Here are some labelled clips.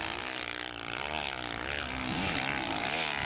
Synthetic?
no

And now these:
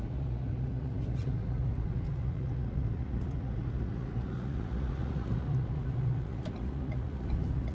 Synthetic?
yes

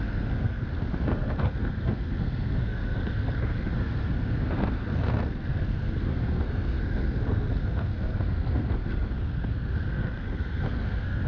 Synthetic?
yes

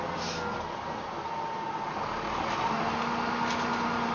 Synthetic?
no